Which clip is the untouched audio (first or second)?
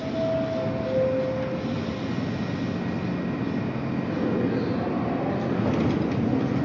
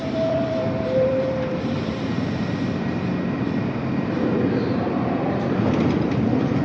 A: first